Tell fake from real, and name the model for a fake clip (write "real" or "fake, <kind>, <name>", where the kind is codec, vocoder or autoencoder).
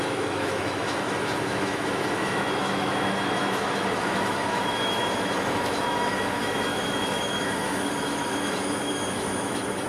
fake, autoencoder, DAC-VAE